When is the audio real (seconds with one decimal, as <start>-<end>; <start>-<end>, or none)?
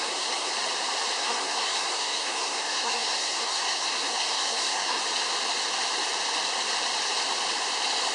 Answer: 0.5-1.2; 5.0-8.1